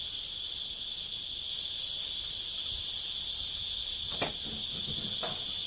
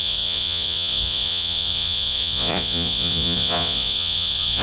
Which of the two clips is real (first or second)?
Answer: first